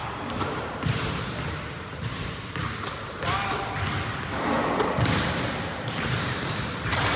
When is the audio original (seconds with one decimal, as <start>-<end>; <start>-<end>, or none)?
2.6-4.8